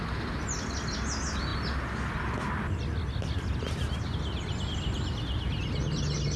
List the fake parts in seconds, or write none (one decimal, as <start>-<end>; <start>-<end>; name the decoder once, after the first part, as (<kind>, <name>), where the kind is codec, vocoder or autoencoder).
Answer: none